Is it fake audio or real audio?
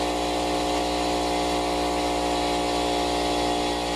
real